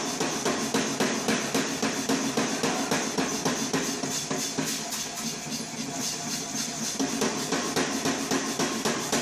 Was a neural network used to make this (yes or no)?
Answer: no